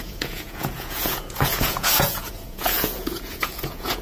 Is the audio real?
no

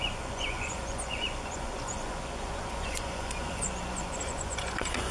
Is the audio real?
no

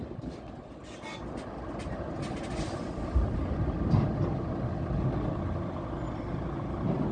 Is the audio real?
yes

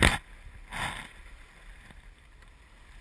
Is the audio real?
yes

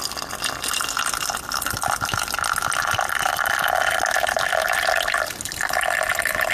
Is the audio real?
yes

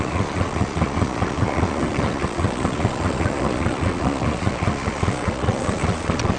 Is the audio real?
no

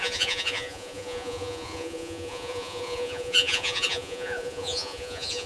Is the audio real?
no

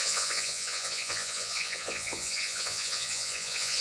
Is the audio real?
no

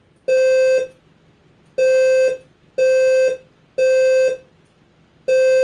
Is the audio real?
yes